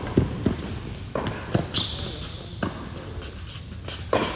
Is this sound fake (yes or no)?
no